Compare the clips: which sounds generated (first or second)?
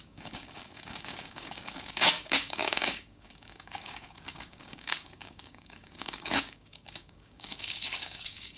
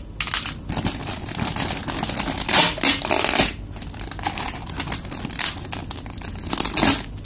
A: first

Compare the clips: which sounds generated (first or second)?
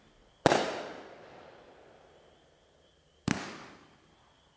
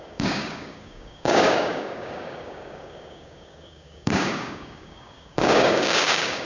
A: second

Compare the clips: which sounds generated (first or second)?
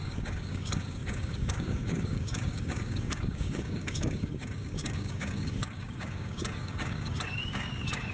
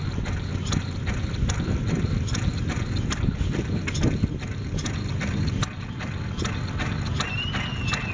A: first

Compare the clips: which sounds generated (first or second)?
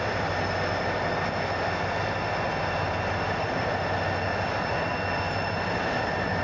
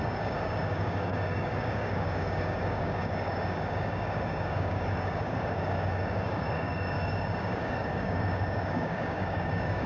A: second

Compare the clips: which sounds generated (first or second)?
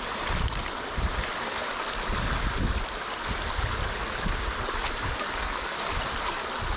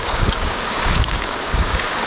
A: second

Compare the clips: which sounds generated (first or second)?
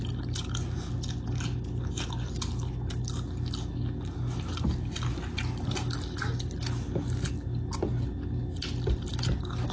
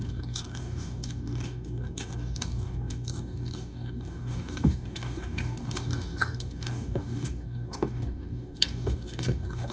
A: second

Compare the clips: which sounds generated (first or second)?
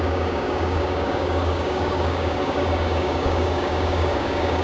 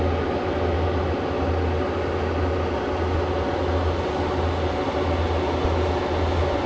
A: first